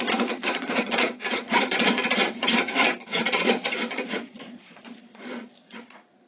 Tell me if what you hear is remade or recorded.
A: remade